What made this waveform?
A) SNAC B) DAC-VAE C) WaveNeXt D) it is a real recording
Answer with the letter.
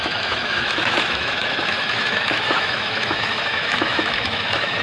B